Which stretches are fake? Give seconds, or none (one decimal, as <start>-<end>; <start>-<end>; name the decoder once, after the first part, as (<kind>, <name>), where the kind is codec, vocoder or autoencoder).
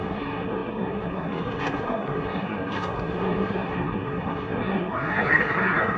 0.0-6.0 (codec, SNAC)